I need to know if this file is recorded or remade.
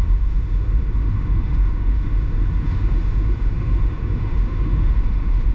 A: remade